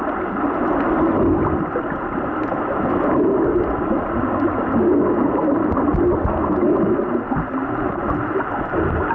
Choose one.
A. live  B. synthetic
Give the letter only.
A